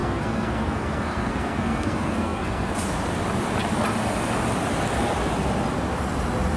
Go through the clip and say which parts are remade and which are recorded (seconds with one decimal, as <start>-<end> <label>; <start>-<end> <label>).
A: 0.0-2.7 remade; 2.7-6.6 recorded